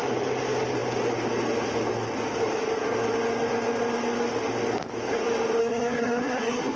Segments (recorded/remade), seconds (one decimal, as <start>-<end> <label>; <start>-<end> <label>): 0.0-5.6 recorded; 5.6-6.8 remade